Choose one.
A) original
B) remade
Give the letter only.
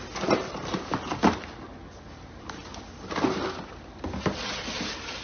A